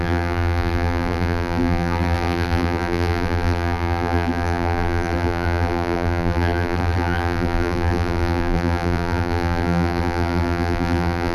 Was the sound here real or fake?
fake